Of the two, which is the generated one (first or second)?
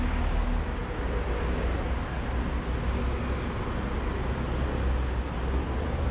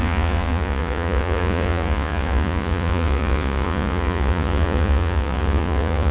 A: second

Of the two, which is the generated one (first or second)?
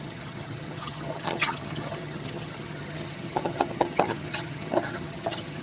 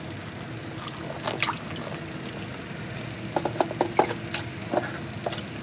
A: first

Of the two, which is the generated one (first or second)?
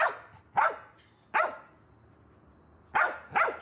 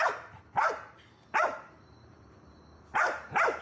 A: second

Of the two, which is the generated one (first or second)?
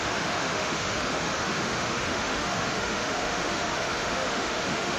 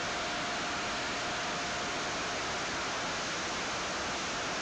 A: first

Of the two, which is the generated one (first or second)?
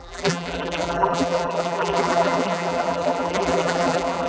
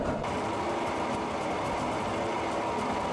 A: first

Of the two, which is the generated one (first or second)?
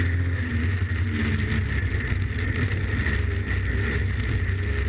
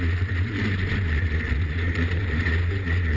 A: second